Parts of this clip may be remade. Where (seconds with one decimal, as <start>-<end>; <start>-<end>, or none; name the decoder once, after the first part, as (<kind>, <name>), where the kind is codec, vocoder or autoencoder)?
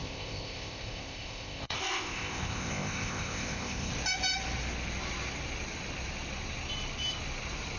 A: 0.0-3.9 (codec, ZipCodec)